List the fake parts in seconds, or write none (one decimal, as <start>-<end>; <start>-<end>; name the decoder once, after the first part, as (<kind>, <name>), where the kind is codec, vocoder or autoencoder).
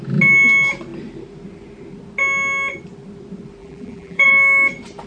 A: 3.6-4.3 (vocoder, BigVGAN v2)